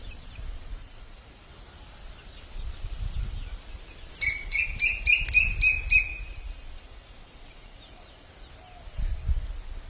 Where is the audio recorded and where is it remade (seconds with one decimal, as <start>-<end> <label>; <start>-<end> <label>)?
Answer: 0.0-0.8 recorded; 0.8-1.5 remade; 1.5-6.1 recorded; 6.1-8.1 remade; 8.1-9.9 recorded